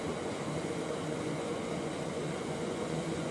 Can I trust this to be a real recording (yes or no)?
no